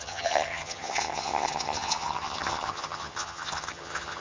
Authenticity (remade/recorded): remade